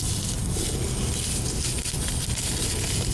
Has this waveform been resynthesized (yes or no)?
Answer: no